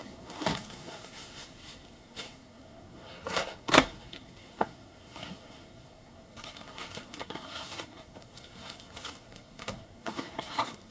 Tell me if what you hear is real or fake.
fake